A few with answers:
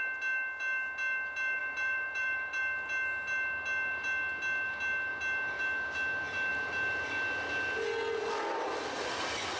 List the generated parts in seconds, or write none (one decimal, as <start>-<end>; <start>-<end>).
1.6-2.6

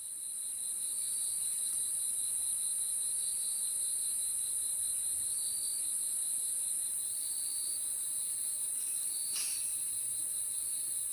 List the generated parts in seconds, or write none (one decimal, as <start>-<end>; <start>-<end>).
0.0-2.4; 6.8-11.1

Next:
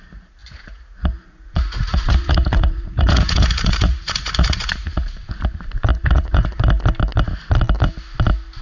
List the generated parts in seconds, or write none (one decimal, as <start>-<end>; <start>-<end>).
0.4-5.3; 5.9-6.6

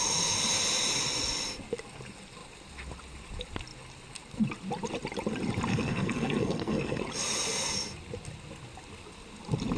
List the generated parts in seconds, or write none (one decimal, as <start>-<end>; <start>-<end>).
5.7-7.0

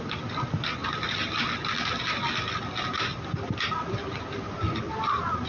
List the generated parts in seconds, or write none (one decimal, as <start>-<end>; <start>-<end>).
none

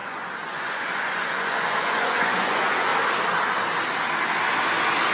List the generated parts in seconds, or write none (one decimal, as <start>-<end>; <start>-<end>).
0.0-2.9

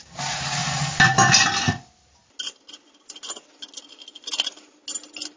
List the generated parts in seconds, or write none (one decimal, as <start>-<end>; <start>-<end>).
none

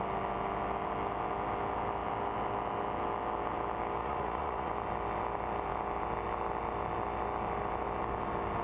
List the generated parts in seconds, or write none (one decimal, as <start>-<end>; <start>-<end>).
4.0-4.7